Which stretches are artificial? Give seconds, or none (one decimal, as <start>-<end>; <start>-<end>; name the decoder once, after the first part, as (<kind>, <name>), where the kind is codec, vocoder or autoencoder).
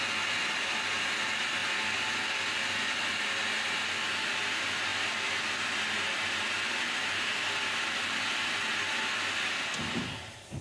none